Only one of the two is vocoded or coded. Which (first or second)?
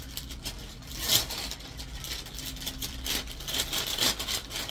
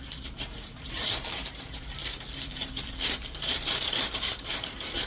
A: second